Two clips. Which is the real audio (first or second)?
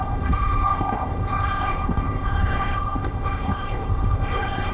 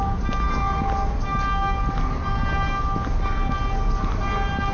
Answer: second